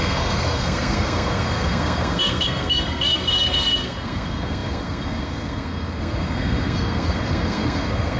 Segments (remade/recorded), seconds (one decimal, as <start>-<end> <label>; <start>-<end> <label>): 0.0-8.2 remade